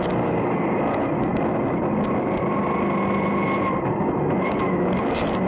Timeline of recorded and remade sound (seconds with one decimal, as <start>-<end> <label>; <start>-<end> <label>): 0.0-5.5 recorded